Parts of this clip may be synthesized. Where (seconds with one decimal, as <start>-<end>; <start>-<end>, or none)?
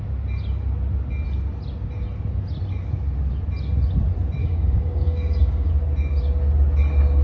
4.4-5.7